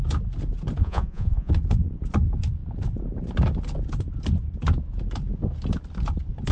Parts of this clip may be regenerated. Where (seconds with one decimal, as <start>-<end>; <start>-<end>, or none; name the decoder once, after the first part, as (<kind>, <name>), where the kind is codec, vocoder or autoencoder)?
0.8-1.5 (vocoder, Vocos)